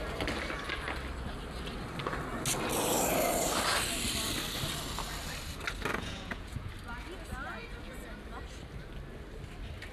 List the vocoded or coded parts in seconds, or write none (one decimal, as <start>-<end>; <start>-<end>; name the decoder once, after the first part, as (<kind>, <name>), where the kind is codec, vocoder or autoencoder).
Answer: 5.9-6.7 (vocoder, Vocos)